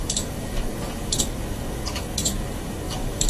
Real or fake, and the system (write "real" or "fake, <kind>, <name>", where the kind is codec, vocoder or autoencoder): fake, codec, DAC